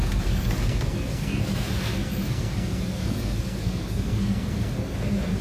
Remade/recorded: remade